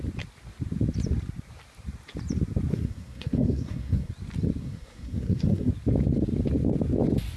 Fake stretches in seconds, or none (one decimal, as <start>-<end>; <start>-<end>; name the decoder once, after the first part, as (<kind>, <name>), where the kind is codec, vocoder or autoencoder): 2.7-4.1 (codec, SNAC); 4.6-5.7